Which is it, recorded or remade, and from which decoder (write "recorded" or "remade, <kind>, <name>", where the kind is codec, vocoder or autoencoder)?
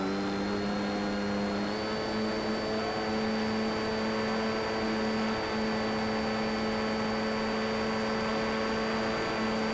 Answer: recorded